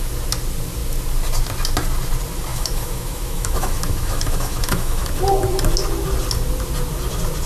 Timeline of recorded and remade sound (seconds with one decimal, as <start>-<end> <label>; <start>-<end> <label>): 0.0-2.5 recorded; 2.5-5.1 remade; 5.1-7.5 recorded